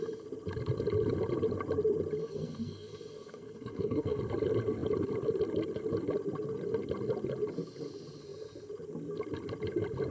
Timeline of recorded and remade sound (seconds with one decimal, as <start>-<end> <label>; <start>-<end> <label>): 0.0-2.2 recorded; 2.2-4.2 remade; 4.2-10.1 recorded